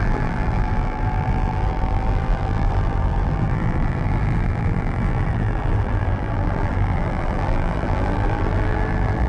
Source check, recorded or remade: remade